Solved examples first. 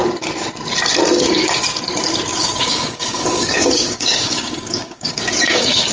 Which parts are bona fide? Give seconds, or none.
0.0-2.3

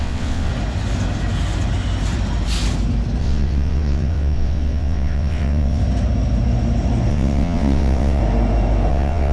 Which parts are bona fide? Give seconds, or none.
0.5-3.2; 5.8-7.1; 8.2-8.9

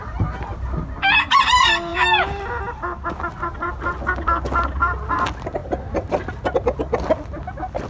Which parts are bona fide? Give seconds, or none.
0.0-7.9

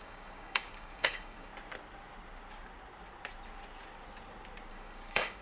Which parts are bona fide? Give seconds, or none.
1.5-4.7

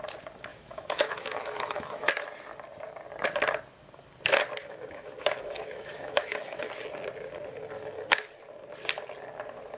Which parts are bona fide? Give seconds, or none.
0.0-0.5; 2.1-4.6; 6.6-9.8

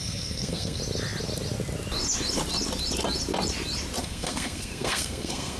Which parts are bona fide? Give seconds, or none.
0.8-4.0

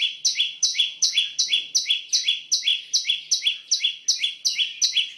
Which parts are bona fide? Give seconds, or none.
0.0-0.7; 1.4-5.2

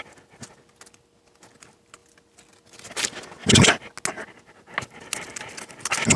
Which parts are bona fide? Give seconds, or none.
0.0-6.2